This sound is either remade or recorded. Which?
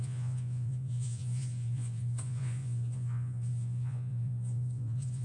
remade